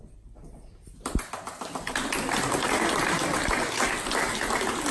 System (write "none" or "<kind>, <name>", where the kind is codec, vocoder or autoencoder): none